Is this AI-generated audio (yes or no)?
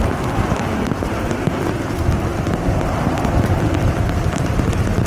no